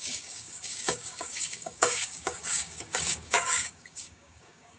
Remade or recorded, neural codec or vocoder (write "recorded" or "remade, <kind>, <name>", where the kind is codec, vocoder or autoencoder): remade, codec, DAC